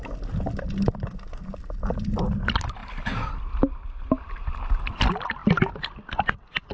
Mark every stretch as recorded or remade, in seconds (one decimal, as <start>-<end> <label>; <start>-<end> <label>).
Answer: 0.0-6.7 recorded